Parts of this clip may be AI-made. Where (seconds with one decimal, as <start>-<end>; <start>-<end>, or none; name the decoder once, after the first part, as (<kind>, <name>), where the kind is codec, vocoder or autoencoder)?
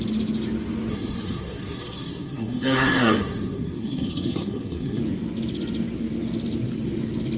0.9-5.0 (codec, SNAC)